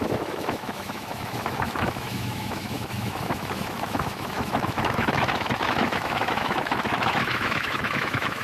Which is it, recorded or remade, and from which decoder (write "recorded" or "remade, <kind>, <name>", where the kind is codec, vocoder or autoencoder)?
remade, autoencoder, DAC-VAE